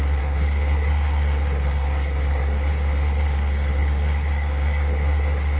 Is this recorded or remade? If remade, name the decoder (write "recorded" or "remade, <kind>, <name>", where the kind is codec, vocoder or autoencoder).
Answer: remade, codec, SNAC